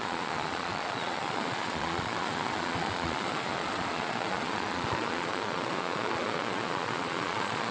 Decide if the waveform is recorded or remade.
remade